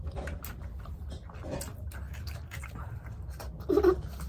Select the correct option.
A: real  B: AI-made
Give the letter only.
A